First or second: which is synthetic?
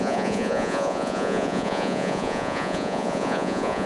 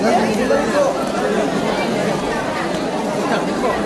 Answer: first